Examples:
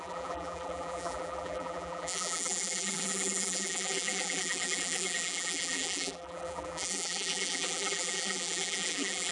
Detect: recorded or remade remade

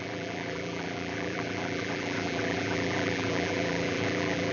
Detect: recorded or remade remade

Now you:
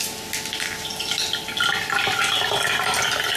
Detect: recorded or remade recorded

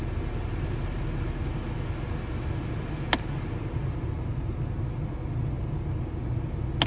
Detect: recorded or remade recorded